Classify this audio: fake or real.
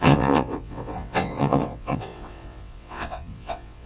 fake